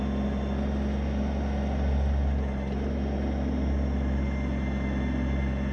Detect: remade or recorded recorded